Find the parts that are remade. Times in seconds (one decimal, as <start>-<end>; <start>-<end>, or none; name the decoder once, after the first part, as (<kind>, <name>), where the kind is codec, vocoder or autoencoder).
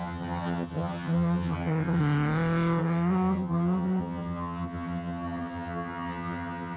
0.0-2.0 (vocoder, HiFi-GAN); 2.8-6.8